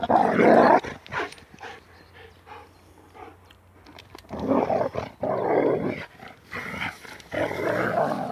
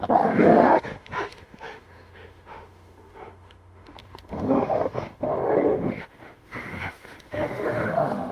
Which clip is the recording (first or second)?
first